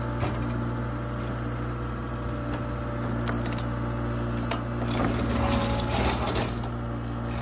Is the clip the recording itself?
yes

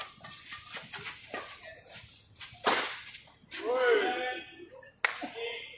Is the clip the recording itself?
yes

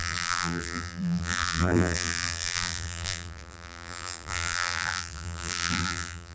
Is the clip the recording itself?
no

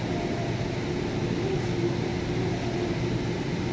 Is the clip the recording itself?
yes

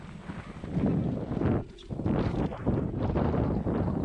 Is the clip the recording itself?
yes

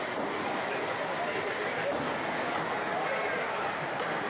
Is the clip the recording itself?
yes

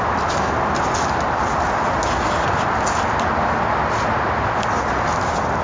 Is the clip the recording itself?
yes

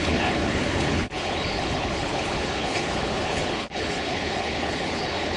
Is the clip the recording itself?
no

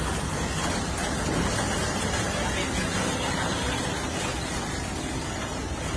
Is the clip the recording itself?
yes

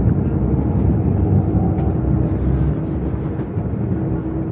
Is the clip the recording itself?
yes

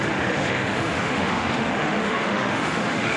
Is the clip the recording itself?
no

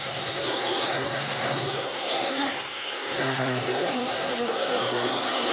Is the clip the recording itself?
no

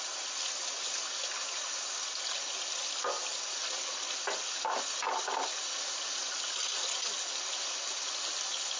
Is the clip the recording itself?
yes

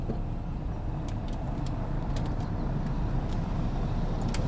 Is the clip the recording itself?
yes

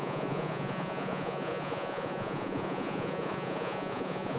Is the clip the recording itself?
no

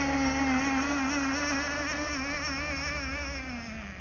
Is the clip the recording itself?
yes